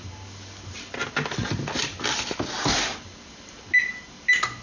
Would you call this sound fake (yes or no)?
no